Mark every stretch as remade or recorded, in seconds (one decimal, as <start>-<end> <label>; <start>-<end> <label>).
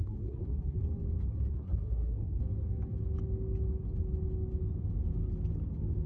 0.0-0.8 remade; 0.8-1.5 recorded; 1.5-2.4 remade; 2.4-6.1 recorded